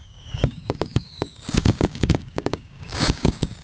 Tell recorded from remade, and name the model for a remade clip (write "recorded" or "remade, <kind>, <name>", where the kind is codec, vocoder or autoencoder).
remade, codec, DAC